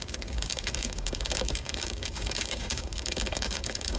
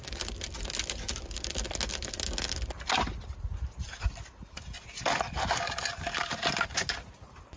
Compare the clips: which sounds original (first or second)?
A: second